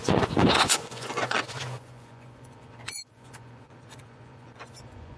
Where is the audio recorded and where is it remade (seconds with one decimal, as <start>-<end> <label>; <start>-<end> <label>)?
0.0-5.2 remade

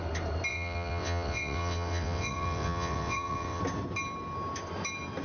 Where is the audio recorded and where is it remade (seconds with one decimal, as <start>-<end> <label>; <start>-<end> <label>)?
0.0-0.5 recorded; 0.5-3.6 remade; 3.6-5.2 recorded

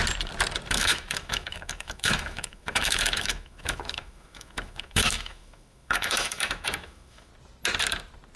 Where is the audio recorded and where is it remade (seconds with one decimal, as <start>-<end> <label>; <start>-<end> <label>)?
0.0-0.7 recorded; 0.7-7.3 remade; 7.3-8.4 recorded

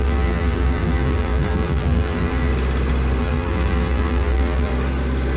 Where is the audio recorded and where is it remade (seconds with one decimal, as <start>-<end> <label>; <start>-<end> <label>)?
0.0-2.5 remade; 2.5-3.2 recorded; 3.2-4.7 remade; 4.7-5.4 recorded

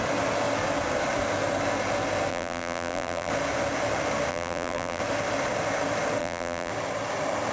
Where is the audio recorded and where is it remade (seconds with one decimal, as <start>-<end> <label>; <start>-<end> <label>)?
0.0-2.3 recorded; 2.3-3.3 remade; 3.3-4.3 recorded; 4.3-5.0 remade; 5.0-6.2 recorded; 6.2-6.7 remade; 6.7-7.5 recorded

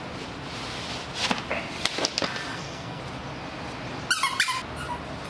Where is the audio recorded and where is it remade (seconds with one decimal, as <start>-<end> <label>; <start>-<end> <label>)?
0.0-2.5 recorded; 2.5-3.0 remade; 3.0-5.3 recorded

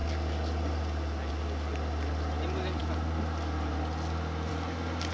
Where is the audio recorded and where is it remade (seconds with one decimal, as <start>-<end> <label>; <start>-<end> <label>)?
0.0-5.1 recorded

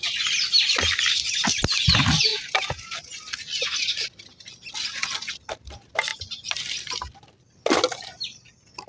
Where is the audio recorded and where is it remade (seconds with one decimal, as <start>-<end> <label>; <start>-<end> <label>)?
0.0-8.9 recorded